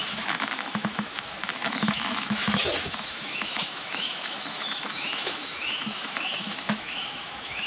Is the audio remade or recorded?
remade